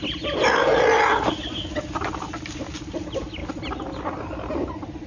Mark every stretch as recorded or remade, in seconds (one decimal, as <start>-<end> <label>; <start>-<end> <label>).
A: 0.0-3.4 recorded; 3.4-3.9 remade; 3.9-5.1 recorded